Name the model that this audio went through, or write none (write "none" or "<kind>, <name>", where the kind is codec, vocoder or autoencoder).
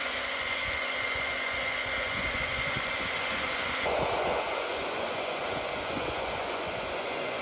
vocoder, Vocos